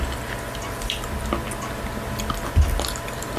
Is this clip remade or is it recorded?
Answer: recorded